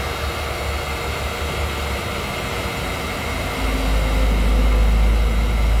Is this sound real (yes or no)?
yes